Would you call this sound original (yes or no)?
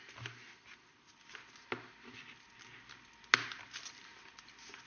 yes